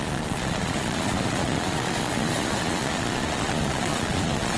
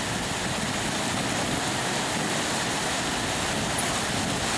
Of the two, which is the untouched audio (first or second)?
second